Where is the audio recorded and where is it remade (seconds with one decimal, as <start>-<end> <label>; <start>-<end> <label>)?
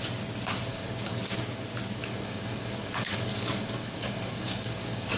0.0-0.7 recorded; 0.7-1.2 remade; 1.2-2.0 recorded; 2.0-5.2 remade